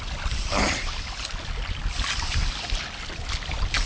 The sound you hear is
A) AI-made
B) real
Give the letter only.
A